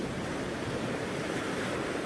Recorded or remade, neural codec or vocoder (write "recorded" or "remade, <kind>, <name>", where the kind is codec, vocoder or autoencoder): remade, vocoder, BigVGAN v2